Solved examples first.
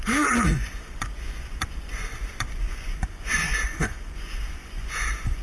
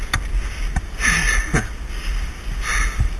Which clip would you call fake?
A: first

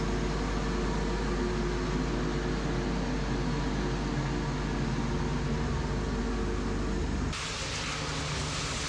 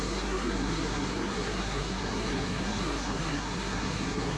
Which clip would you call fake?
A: second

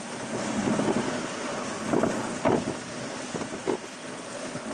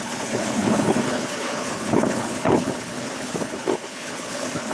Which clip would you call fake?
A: second